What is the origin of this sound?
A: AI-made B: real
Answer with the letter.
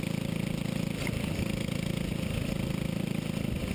B